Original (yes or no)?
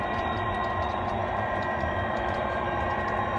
no